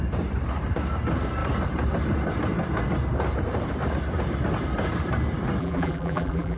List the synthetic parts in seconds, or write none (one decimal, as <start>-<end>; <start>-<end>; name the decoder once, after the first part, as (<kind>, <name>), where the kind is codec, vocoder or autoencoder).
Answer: 5.6-6.6 (vocoder, BigVGAN v2)